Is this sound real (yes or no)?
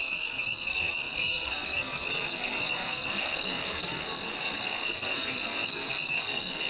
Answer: no